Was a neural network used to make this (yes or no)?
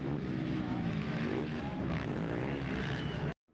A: yes